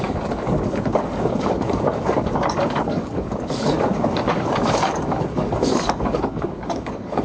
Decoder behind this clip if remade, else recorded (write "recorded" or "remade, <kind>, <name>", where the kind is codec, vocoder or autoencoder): remade, codec, DAC